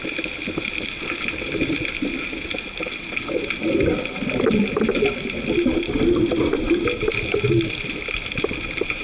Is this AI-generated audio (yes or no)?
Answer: no